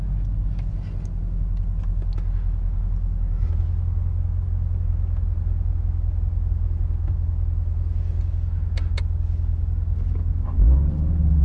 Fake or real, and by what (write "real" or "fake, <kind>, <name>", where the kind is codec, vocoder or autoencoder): real